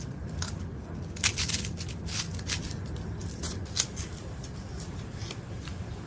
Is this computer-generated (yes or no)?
no